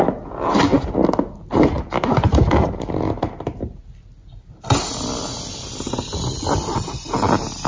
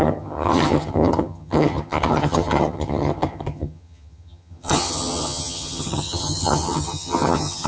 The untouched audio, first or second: first